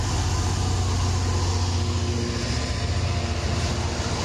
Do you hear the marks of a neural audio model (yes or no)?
no